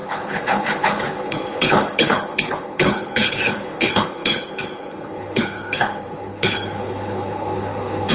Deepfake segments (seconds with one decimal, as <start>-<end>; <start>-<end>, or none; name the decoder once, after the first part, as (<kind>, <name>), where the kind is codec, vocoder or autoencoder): 0.0-8.1 (codec, HILCodec)